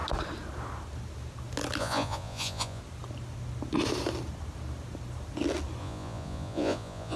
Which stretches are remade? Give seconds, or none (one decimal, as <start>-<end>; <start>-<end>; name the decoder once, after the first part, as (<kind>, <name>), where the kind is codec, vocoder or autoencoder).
1.8-2.8 (vocoder, Vocos); 5.8-7.2